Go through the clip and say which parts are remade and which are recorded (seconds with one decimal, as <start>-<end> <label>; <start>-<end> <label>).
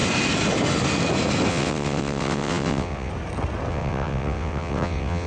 0.0-1.5 recorded; 1.5-3.1 remade; 3.1-3.7 recorded; 3.7-5.3 remade